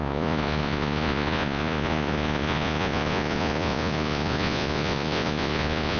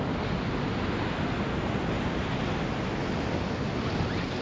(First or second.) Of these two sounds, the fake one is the first